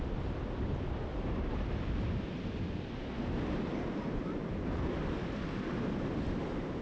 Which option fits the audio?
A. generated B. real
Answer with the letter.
B